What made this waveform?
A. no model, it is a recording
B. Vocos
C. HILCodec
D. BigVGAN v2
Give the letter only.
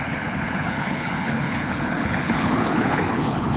C